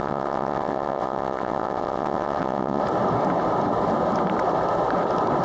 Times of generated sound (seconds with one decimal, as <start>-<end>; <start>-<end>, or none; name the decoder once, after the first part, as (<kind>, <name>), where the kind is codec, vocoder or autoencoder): 0.0-2.8 (vocoder, WaveNeXt)